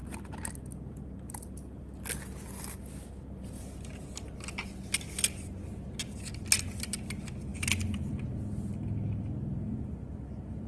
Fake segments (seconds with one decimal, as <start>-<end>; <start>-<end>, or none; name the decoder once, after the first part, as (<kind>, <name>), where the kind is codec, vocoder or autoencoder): none